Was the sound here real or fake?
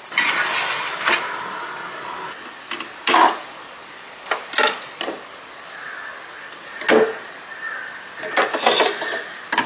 real